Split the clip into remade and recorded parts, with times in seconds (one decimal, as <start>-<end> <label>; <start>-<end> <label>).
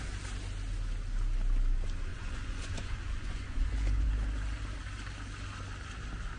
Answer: 0.0-2.1 recorded; 2.1-4.1 remade; 4.1-6.4 recorded